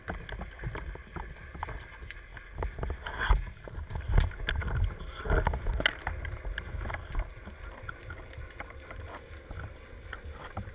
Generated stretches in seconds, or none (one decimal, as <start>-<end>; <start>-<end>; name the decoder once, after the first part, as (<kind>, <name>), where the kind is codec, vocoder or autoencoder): none